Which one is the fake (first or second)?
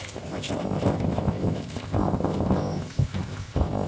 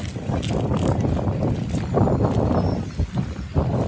first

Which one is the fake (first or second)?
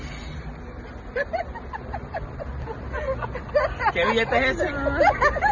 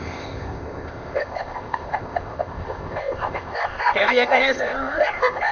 second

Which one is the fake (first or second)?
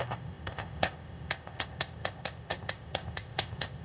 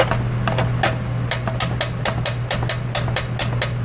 first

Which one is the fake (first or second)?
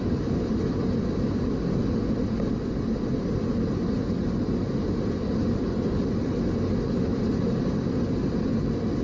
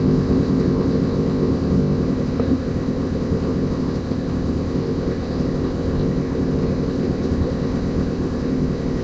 second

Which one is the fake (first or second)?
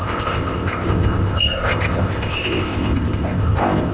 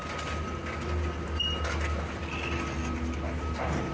first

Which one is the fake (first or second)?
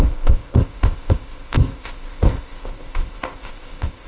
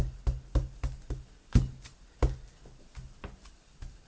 first